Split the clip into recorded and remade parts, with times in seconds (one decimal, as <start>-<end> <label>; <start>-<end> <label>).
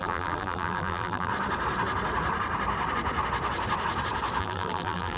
0.0-1.3 remade; 1.3-4.4 recorded; 4.4-5.2 remade